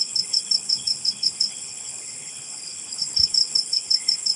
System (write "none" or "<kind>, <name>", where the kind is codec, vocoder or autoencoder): codec, HILCodec